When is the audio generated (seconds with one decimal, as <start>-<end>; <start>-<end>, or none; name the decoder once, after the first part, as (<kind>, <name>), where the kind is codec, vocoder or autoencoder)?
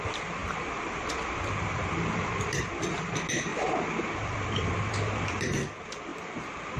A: 6.1-6.8 (vocoder, BigVGAN v2)